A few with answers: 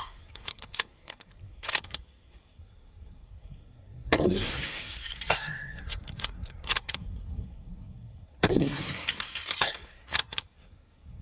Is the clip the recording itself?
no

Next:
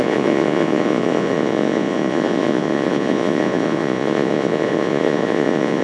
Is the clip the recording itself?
no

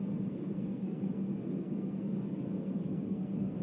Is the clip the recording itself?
no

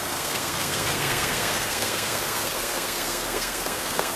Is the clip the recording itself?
no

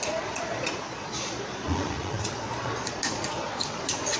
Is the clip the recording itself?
no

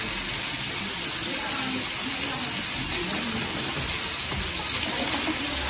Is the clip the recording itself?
yes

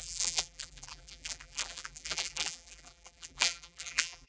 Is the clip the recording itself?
no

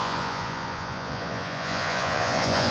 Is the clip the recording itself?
no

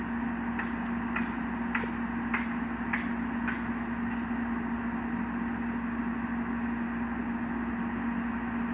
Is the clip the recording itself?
yes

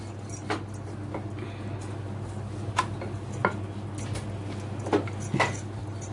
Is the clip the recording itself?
yes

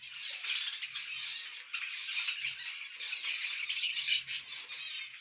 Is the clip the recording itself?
yes